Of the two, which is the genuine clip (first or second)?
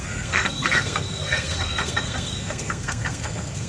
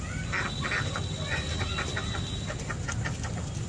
second